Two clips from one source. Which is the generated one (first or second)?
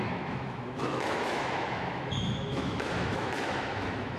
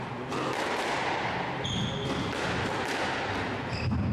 first